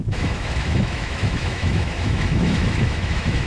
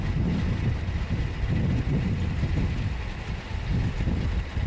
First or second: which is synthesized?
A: first